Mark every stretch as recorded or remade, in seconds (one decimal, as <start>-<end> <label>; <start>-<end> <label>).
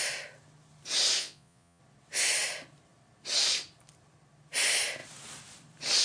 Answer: 0.0-1.2 recorded; 1.2-1.8 remade; 1.8-6.0 recorded